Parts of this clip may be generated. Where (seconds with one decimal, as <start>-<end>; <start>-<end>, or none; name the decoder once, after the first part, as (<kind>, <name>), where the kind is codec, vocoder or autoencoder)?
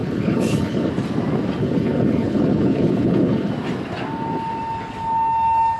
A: 0.0-0.9 (codec, HILCodec); 1.6-3.5